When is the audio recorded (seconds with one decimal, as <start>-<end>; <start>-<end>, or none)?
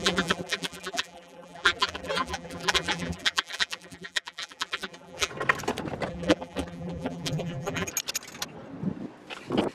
5.3-6.1; 7.9-9.7